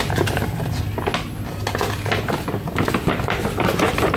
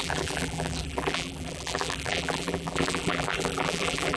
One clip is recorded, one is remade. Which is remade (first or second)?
second